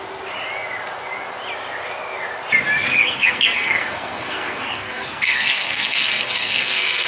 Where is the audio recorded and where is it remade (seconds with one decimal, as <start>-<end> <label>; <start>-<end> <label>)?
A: 0.0-3.0 recorded; 3.0-7.1 remade